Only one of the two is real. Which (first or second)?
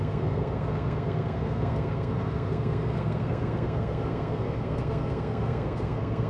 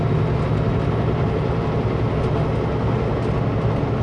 second